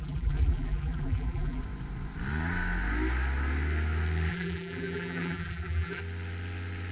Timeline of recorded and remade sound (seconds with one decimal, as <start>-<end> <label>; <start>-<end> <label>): 0.0-1.6 remade; 1.6-4.3 recorded; 4.3-6.0 remade; 6.0-6.9 recorded